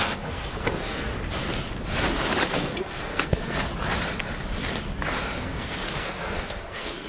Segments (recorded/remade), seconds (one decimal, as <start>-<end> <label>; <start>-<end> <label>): 0.0-1.1 remade; 1.1-2.5 recorded; 2.5-3.7 remade; 3.7-5.4 recorded; 5.4-7.1 remade